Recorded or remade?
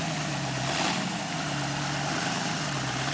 recorded